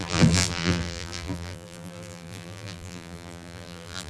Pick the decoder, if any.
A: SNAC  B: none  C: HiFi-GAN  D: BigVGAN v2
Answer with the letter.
D